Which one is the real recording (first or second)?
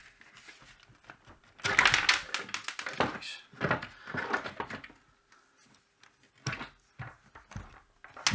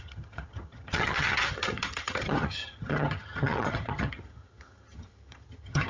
first